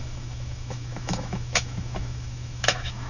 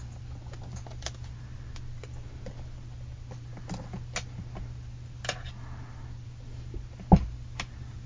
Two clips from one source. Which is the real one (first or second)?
second